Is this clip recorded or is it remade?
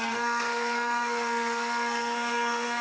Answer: remade